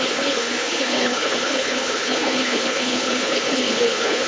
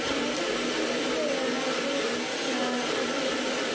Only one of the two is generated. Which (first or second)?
first